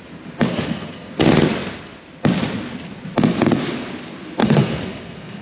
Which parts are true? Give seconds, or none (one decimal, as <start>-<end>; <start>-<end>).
0.0-0.5; 1.1-4.4

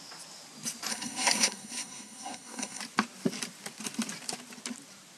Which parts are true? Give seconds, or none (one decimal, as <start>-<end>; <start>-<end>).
0.0-0.9; 2.8-5.2